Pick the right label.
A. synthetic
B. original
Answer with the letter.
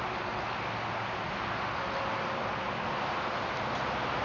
B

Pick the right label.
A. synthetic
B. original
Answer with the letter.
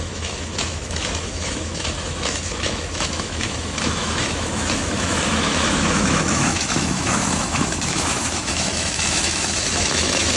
A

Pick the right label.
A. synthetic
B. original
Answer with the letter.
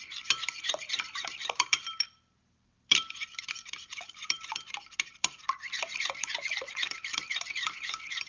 A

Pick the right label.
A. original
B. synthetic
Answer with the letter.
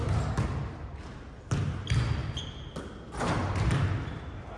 A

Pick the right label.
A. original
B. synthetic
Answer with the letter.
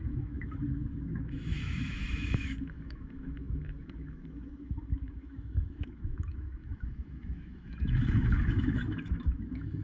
B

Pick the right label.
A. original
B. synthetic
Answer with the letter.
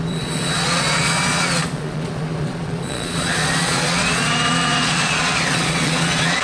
B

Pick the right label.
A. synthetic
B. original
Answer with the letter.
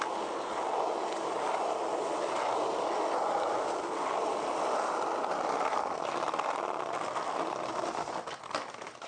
B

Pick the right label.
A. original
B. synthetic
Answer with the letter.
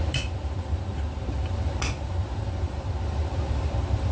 B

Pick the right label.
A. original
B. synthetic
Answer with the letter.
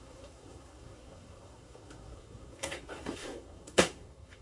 B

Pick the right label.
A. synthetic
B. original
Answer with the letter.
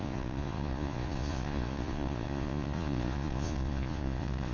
A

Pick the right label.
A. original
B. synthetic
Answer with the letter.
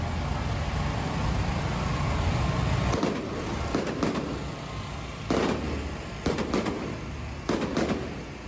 A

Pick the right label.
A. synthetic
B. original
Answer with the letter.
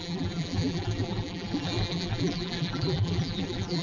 A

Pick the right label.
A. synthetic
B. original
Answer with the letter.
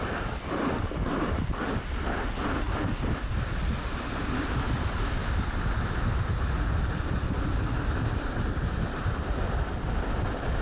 B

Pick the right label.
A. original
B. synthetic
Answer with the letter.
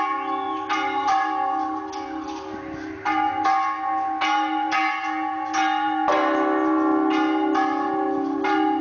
A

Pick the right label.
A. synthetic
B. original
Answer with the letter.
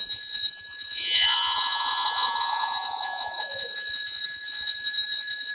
A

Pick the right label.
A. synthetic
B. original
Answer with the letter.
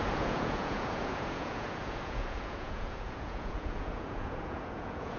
A